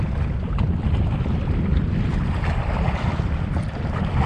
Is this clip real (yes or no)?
no